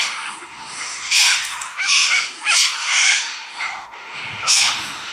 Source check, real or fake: fake